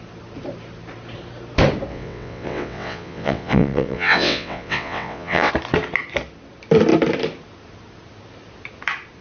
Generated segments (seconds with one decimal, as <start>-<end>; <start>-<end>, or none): 1.9-5.5